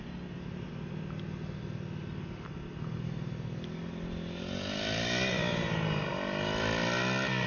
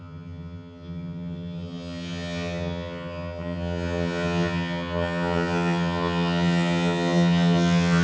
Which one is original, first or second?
first